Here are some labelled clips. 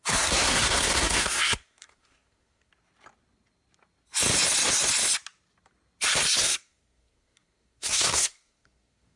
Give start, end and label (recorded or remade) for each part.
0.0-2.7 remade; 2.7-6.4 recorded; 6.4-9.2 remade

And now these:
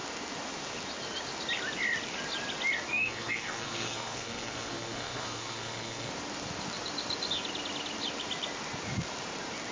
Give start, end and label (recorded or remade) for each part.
0.0-2.9 recorded; 2.9-6.1 remade; 6.1-9.7 recorded